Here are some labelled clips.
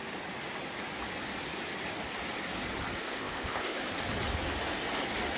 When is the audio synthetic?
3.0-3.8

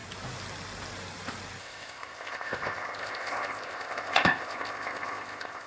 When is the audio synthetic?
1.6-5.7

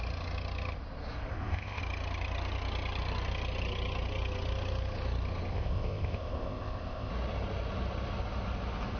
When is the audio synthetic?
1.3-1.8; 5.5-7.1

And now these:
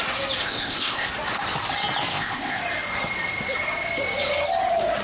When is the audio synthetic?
0.4-1.1; 2.1-2.6